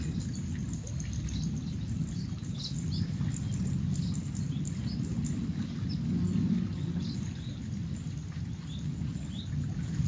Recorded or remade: recorded